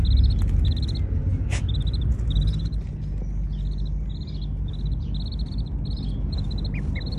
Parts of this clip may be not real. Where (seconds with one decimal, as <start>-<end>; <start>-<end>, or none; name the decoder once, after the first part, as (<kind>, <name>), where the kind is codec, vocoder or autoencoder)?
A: none